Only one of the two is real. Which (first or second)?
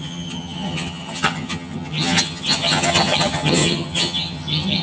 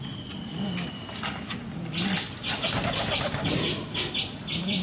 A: second